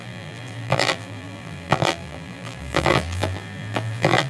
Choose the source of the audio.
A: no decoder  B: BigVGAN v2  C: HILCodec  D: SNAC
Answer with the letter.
B